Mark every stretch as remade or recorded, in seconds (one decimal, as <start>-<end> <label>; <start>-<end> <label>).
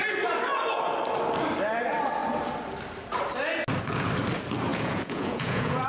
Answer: 0.0-4.7 recorded; 4.7-5.9 remade